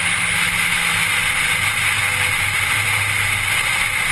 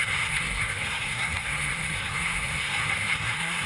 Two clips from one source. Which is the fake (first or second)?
second